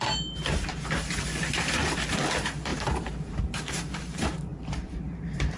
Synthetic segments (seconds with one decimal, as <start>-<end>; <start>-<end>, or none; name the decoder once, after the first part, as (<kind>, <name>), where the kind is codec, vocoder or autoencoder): 0.0-5.6 (vocoder, BigVGAN v2)